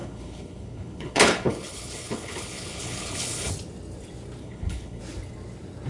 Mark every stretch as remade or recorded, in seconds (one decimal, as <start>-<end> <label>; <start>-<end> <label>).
0.0-3.5 remade; 3.5-4.4 recorded; 4.4-5.0 remade; 5.0-5.9 recorded